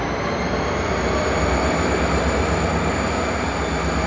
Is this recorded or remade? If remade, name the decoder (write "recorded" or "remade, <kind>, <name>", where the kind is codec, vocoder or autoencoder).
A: recorded